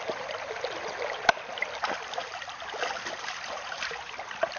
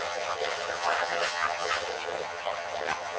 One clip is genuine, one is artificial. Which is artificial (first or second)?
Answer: second